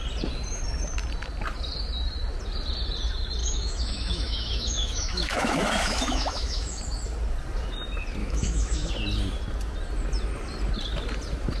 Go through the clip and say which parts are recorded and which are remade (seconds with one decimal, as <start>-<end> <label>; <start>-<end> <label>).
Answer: 0.0-3.4 recorded; 3.4-6.8 remade; 6.8-8.2 recorded; 8.2-8.9 remade; 8.9-11.6 recorded

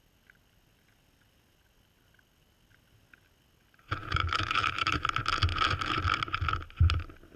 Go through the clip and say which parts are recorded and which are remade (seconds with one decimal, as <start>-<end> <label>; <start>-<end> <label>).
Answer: 0.0-4.0 recorded; 4.0-5.0 remade; 5.0-7.4 recorded

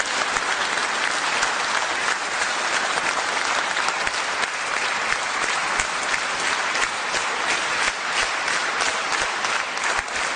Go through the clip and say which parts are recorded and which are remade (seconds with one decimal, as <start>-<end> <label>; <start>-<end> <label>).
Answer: 0.0-2.0 recorded; 2.0-3.1 remade; 3.1-10.4 recorded

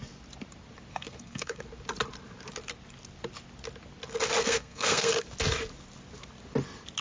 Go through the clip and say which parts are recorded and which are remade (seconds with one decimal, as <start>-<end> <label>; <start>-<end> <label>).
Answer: 0.0-0.9 recorded; 0.9-1.6 remade; 1.6-4.4 recorded; 4.4-5.1 remade; 5.1-7.0 recorded